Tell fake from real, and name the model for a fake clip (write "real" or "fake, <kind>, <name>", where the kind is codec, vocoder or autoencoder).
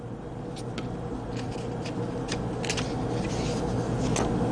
real